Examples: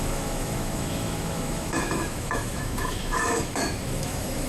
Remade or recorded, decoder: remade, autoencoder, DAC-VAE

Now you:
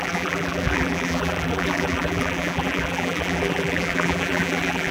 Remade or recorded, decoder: remade, vocoder, BigVGAN v2